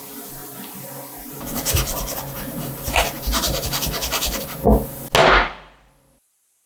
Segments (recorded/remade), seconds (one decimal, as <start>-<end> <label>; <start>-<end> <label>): 0.0-0.4 recorded; 0.4-4.4 remade; 4.4-5.2 recorded; 5.2-6.0 remade; 6.0-6.7 recorded